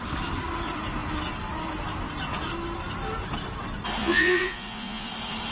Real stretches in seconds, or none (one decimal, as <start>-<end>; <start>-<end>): 0.0-4.0; 5.1-5.5